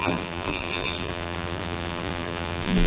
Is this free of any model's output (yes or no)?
no